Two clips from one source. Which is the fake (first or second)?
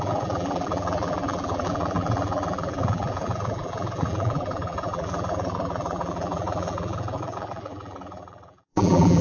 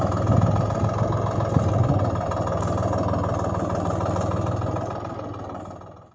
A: first